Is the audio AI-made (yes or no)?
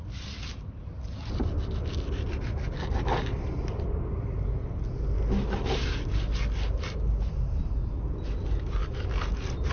no